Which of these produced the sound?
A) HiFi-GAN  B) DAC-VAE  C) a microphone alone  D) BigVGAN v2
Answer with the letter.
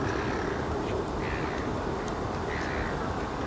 C